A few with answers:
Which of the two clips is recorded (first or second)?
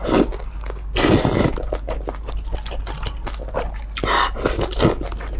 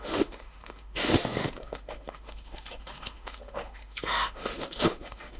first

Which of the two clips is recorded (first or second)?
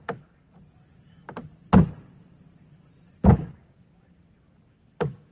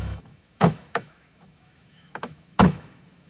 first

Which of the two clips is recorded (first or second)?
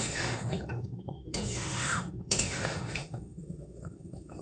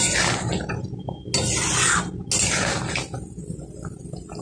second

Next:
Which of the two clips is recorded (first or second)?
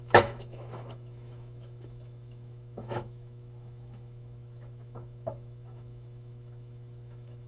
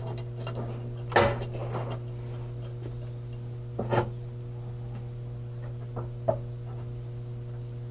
second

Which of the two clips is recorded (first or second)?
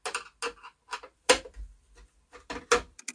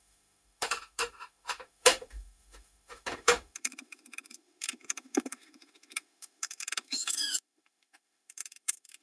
first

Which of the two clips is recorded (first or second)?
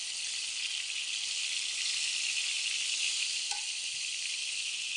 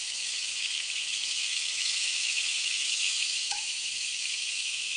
first